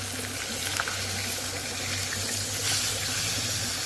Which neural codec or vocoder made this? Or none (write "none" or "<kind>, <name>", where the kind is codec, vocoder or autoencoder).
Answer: none